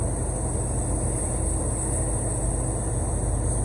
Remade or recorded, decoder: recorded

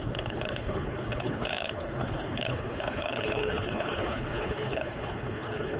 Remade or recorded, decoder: remade, codec, HILCodec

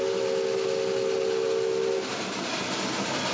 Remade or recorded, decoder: recorded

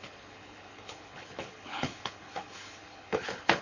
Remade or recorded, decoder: remade, codec, HILCodec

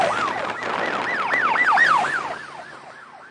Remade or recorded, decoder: recorded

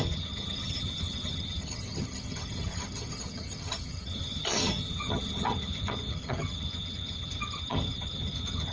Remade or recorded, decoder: remade, vocoder, HiFi-GAN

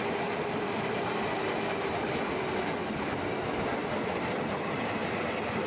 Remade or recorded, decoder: recorded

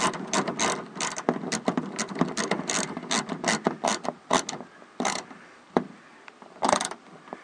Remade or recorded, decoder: recorded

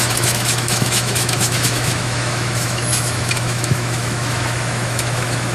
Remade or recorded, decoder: remade, autoencoder, DAC-VAE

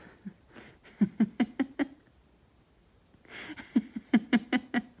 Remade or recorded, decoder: recorded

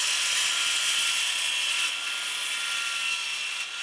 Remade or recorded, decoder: recorded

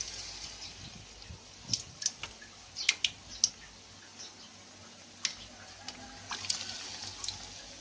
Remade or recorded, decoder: recorded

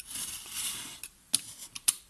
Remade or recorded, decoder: remade, vocoder, BigVGAN v2